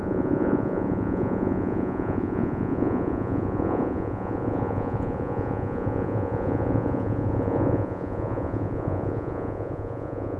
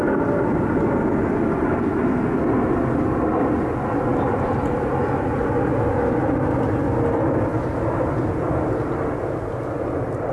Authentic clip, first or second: second